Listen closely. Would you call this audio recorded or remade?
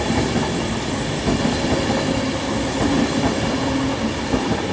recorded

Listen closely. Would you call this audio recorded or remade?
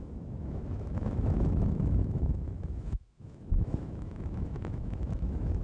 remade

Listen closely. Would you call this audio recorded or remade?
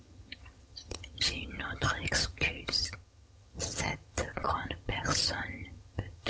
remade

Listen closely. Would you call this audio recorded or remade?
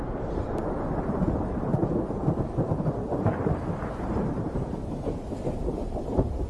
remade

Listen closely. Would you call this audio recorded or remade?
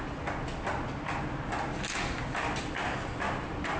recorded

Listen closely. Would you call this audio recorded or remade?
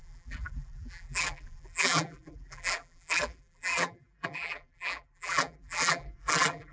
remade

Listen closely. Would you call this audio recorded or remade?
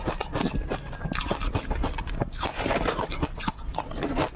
recorded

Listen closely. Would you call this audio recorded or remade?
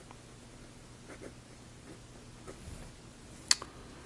recorded